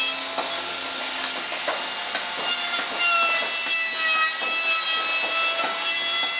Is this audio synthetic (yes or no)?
no